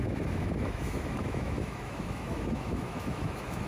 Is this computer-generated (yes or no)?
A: yes